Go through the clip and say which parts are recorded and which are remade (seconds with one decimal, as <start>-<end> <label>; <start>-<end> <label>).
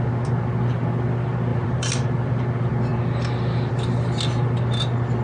0.0-1.5 recorded; 1.5-2.4 remade; 2.4-5.2 recorded